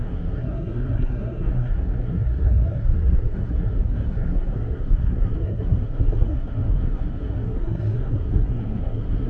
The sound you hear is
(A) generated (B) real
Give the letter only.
A